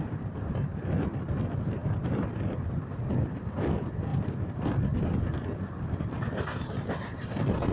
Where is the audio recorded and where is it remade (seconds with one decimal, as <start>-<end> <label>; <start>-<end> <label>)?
0.0-4.1 recorded; 4.1-4.7 remade; 4.7-7.7 recorded